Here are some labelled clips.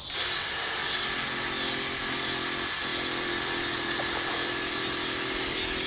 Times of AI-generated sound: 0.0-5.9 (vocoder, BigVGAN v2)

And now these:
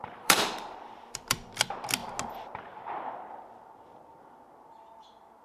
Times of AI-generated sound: 0.0-1.6 (vocoder, BigVGAN v2)

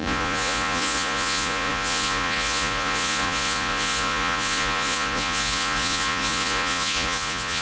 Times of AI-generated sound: 0.0-7.6 (vocoder, Vocos)